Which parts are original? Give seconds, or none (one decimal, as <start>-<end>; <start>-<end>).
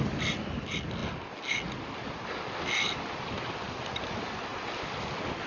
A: 0.0-5.5